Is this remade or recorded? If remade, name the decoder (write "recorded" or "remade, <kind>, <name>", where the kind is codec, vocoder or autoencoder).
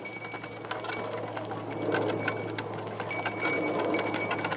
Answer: recorded